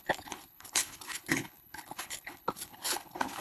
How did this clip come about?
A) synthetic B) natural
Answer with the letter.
A